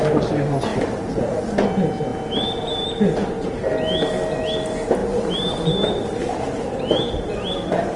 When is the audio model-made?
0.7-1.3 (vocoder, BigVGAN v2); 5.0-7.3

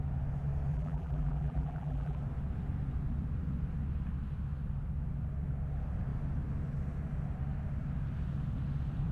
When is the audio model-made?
0.7-2.2 (vocoder, BigVGAN v2)